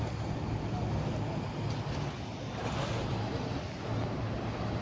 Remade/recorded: recorded